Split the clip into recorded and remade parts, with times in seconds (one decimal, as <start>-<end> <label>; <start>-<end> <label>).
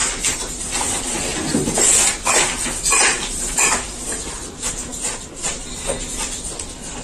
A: 0.0-0.9 remade; 0.9-4.9 recorded; 4.9-5.6 remade; 5.6-7.0 recorded